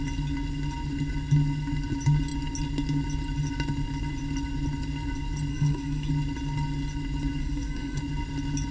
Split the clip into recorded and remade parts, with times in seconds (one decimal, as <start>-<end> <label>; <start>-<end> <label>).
0.0-5.5 recorded; 5.5-6.1 remade; 6.1-7.4 recorded; 7.4-8.0 remade; 8.0-8.7 recorded